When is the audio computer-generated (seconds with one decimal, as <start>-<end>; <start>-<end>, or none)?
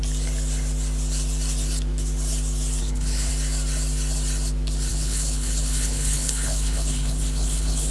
2.8-3.3; 4.9-7.9